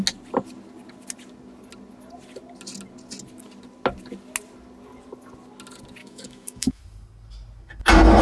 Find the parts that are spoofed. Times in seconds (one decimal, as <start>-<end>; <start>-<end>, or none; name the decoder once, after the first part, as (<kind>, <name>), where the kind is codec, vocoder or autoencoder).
6.0-6.8 (autoencoder, DAC-VAE)